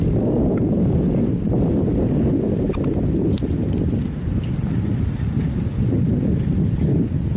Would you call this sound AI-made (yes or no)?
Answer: no